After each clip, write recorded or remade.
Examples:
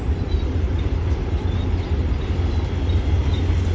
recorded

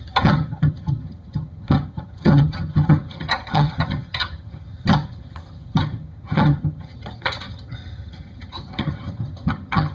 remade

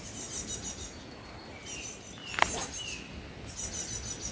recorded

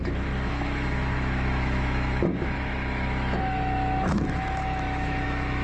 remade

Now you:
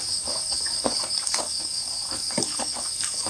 remade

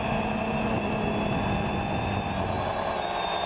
recorded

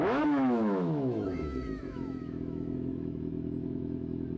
remade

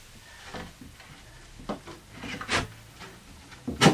recorded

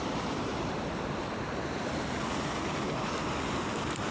recorded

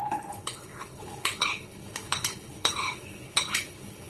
remade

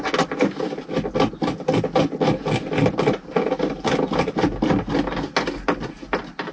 recorded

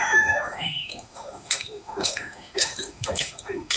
remade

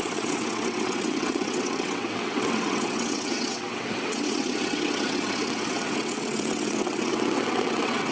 remade